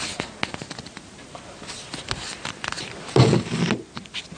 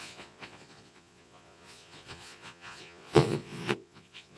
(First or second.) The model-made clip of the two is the second